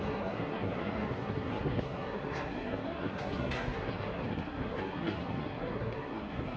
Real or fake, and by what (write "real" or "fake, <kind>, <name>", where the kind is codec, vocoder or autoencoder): fake, codec, SNAC